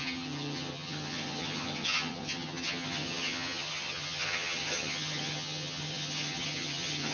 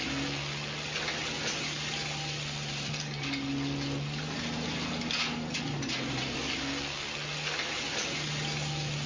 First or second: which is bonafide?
second